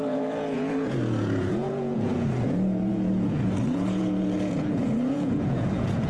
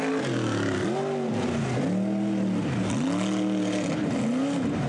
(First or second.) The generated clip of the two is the first